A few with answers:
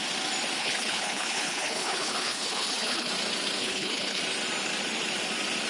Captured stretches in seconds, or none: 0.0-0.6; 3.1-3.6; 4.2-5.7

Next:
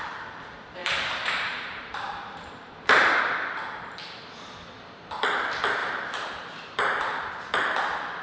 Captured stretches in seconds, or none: 0.0-0.8; 3.2-5.8; 7.3-8.2